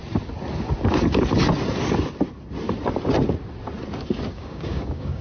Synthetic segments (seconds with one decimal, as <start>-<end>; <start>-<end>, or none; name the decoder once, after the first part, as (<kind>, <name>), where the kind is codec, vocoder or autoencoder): 4.3-5.2 (codec, DAC)